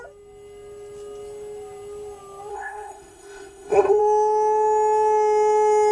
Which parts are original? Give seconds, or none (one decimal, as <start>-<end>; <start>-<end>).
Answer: 0.0-2.5; 4.0-5.9